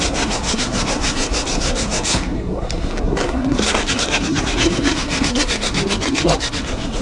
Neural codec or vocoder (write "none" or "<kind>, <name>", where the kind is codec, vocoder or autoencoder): codec, SNAC